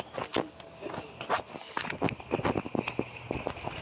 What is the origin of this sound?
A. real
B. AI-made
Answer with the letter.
A